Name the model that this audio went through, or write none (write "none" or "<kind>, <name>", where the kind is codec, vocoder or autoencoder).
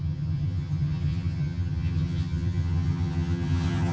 vocoder, HiFi-GAN